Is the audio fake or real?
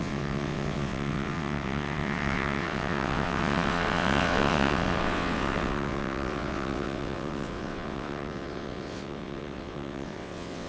fake